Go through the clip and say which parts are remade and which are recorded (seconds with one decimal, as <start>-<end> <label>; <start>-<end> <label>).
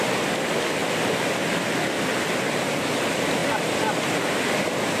0.0-5.0 recorded